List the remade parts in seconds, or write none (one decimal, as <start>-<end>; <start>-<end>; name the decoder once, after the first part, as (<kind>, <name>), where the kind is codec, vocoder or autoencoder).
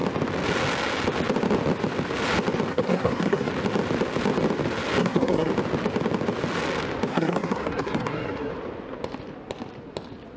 2.7-3.5 (codec, SNAC); 5.0-5.5; 7.1-8.5